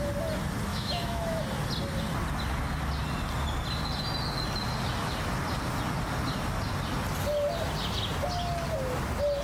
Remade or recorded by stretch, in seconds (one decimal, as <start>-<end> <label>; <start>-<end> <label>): 0.0-0.7 recorded; 0.7-1.4 remade; 1.4-9.4 recorded